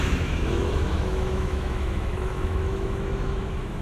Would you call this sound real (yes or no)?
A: no